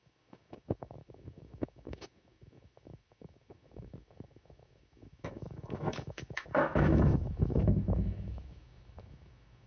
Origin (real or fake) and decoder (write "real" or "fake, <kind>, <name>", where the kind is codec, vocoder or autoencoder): fake, autoencoder, DAC-VAE